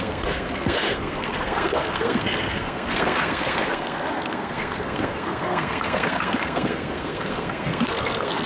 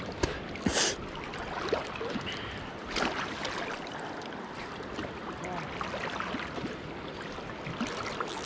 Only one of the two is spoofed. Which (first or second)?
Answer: first